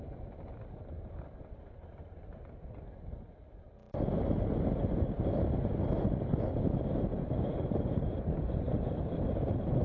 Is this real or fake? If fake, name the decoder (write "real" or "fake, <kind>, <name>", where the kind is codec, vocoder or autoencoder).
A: real